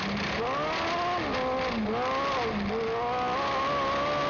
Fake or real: real